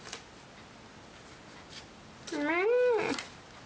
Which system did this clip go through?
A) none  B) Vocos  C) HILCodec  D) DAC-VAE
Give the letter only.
A